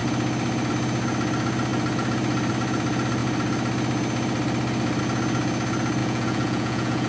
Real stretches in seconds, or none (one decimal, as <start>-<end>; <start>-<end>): 0.0-6.0